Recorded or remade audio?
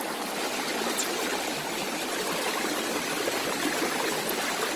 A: recorded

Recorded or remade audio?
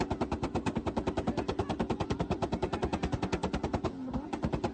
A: recorded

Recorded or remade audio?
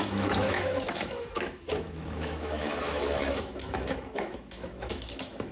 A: remade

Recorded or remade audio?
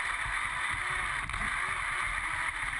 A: recorded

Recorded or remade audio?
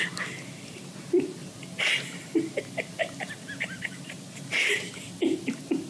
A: recorded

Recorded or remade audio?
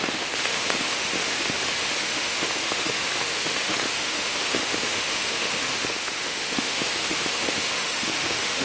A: remade